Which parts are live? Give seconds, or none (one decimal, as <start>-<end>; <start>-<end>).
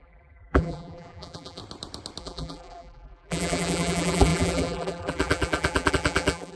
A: 1.6-2.2